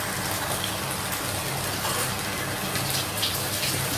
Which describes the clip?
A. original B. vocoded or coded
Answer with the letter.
A